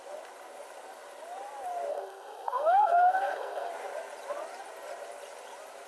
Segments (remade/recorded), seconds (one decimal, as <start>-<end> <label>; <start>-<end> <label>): 0.0-1.9 recorded; 1.9-3.7 remade; 3.7-5.9 recorded